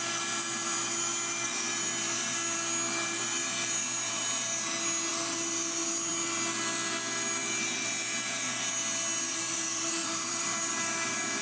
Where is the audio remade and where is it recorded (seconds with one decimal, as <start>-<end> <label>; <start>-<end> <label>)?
0.0-9.3 recorded; 9.3-11.4 remade